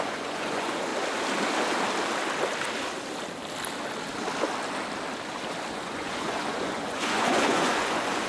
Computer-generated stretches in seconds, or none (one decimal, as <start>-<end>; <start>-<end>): 0.0-0.9; 5.7-8.3